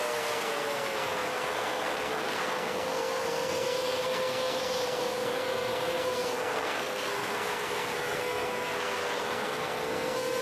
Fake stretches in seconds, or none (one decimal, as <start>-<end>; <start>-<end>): 0.0-10.4